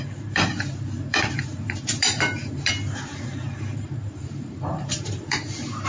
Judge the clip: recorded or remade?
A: remade